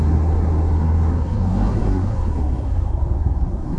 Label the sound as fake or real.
fake